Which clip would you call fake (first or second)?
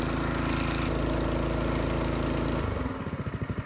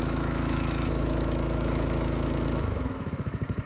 second